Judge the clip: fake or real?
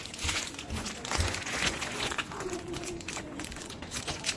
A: fake